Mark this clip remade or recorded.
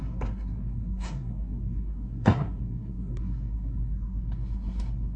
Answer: remade